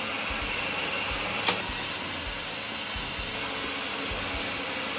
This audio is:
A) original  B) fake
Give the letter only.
A